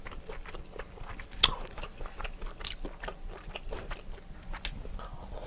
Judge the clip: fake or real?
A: real